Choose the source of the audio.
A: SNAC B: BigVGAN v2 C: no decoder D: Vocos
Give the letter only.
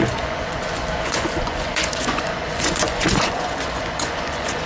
D